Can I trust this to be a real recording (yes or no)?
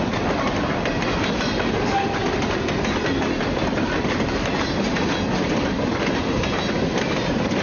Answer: yes